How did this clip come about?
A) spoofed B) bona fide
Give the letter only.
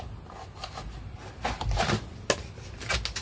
B